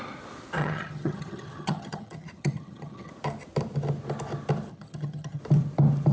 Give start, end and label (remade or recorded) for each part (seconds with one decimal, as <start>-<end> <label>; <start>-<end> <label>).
0.0-0.6 recorded; 0.6-3.1 remade; 3.1-4.7 recorded; 4.7-5.4 remade; 5.4-6.1 recorded